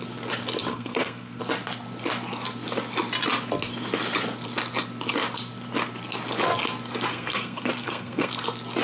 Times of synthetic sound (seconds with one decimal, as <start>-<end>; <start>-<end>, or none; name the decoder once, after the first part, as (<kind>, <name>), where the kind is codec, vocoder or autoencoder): 0.7-1.4 (codec, SNAC); 7.1-8.3